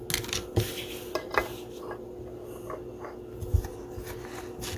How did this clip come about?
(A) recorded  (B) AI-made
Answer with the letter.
A